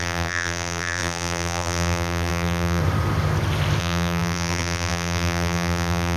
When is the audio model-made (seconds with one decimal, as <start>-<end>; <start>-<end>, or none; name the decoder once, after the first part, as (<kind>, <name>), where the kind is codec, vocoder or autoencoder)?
0.0-2.8 (vocoder, BigVGAN v2); 3.8-6.2